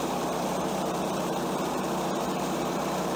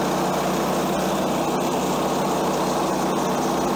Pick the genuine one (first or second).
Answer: second